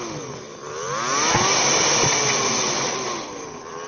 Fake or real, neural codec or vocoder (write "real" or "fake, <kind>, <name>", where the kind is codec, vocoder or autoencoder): real